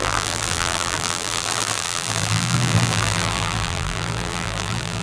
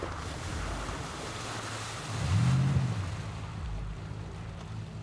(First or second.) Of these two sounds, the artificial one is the first